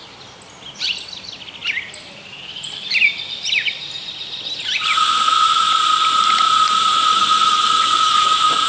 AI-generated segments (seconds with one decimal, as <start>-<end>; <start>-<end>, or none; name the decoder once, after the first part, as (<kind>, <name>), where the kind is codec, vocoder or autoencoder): 0.0-8.7 (vocoder, BigVGAN v2)